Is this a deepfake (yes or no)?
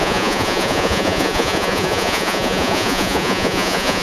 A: yes